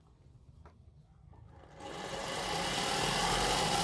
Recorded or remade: recorded